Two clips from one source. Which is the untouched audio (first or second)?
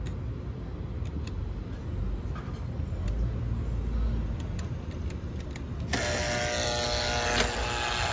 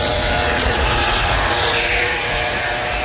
first